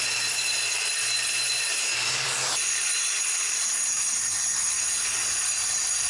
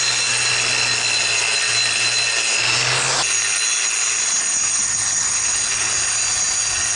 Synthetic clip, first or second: first